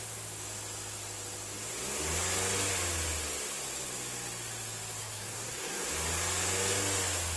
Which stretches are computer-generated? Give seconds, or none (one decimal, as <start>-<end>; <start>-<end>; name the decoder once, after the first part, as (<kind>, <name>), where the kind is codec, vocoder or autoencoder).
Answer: 5.0-5.9 (codec, SNAC)